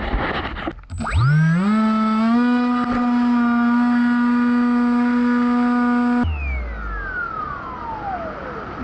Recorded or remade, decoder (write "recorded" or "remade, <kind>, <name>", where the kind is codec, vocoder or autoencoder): recorded